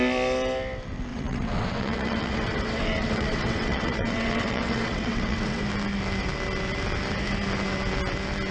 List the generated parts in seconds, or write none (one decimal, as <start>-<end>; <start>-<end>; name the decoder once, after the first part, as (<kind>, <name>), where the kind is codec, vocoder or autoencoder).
1.1-5.6 (vocoder, WaveNeXt)

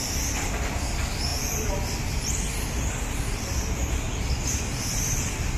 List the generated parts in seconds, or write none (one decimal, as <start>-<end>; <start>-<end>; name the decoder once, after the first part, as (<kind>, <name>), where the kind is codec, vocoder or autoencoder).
none

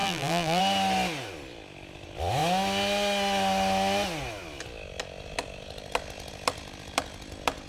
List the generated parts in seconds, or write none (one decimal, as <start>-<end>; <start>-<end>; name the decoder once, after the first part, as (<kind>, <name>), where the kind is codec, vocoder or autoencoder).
0.0-0.6 (vocoder, BigVGAN v2)

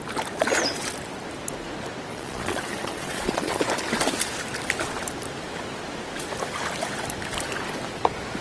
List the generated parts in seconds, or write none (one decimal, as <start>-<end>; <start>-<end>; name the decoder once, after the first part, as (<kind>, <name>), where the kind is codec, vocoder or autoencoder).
2.1-3.7 (vocoder, Vocos)

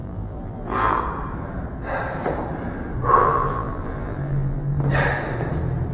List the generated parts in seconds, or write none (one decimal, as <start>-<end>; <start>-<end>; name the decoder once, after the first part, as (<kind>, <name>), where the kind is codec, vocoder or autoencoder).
0.0-1.0 (vocoder, BigVGAN v2); 3.2-4.8

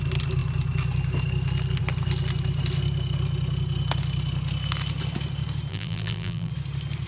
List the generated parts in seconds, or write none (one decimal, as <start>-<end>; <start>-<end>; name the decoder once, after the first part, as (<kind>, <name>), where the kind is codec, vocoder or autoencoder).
5.7-6.5 (vocoder, BigVGAN v2)

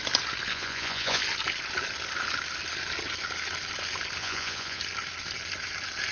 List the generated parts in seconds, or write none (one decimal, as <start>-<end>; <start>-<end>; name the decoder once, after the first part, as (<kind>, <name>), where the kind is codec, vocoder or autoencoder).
0.5-1.2 (vocoder, Vocos); 4.2-4.8

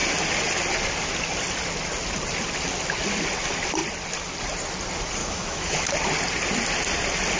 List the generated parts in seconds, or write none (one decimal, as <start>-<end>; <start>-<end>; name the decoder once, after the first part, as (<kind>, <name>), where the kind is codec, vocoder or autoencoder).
5.2-5.9 (autoencoder, DAC-VAE)